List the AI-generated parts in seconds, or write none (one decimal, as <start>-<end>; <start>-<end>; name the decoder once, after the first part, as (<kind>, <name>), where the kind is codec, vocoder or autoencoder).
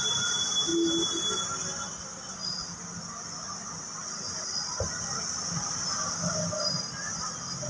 none